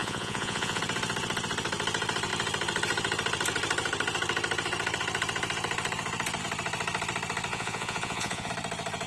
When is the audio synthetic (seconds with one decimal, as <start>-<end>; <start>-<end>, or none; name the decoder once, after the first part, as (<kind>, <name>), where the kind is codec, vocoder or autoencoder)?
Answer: 0.0-0.8 (vocoder, Vocos); 7.5-8.5